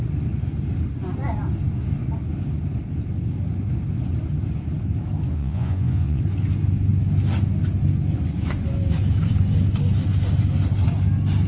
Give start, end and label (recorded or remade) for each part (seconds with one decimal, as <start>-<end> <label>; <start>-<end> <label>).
0.0-5.3 recorded; 5.3-6.2 remade; 6.2-11.5 recorded